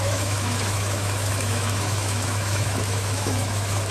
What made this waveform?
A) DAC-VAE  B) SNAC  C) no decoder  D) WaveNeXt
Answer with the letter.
A